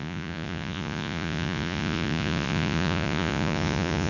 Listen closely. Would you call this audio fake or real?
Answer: fake